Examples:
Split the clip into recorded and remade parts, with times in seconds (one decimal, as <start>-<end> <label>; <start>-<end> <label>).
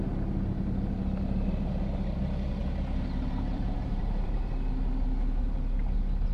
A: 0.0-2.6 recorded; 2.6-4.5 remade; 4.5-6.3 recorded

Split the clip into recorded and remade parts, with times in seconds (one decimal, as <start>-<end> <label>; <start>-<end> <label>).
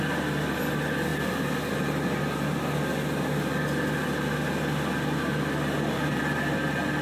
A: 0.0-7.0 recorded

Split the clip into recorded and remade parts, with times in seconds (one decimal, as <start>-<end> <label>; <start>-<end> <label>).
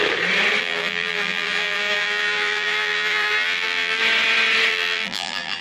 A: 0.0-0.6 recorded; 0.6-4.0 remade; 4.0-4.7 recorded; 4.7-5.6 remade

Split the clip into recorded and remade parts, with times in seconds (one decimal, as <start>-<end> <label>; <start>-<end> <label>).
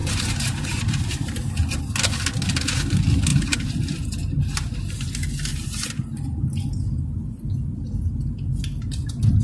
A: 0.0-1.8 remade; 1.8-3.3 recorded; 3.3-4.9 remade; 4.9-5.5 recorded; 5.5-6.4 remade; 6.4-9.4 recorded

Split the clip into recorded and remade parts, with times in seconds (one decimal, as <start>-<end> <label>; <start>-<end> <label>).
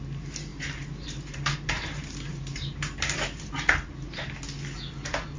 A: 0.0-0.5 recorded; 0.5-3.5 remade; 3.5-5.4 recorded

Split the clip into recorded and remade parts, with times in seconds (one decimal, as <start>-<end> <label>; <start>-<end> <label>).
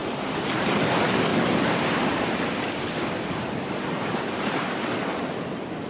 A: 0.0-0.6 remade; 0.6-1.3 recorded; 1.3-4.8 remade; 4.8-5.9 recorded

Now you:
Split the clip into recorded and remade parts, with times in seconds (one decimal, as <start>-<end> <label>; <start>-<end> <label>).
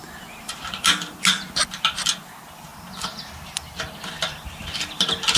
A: 0.0-5.4 remade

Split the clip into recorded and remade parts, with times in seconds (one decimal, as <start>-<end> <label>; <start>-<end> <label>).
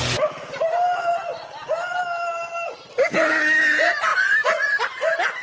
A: 0.0-4.1 recorded; 4.1-4.8 remade; 4.8-5.4 recorded